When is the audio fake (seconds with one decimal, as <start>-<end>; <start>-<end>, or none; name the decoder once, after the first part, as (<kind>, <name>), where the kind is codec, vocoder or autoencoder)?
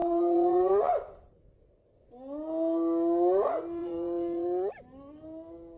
0.0-0.9 (vocoder, Vocos); 3.8-4.7